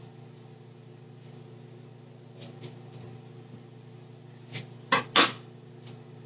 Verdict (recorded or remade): recorded